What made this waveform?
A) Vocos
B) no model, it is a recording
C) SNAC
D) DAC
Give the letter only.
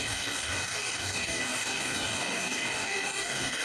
D